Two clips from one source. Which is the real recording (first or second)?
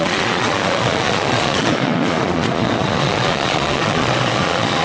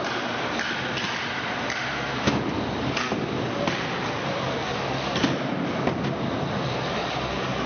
second